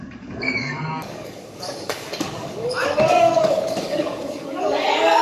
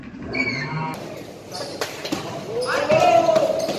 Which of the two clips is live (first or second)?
second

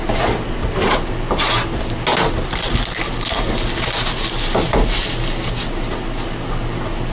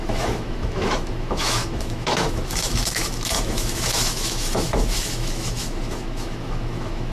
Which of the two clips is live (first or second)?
first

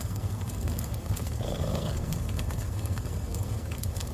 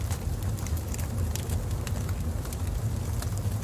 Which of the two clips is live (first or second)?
second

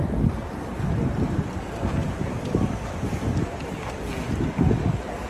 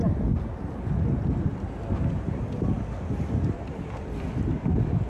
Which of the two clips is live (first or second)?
second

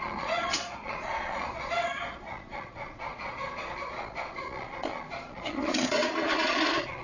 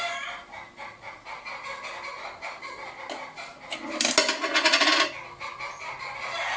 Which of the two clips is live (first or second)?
second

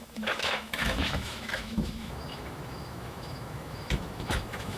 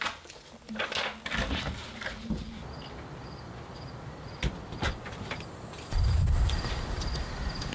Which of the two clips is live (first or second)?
second